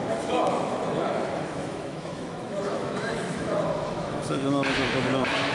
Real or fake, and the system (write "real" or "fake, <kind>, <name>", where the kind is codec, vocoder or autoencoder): fake, autoencoder, DAC-VAE